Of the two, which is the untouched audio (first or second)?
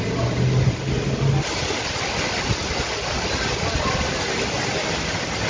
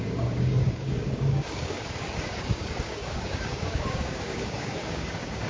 first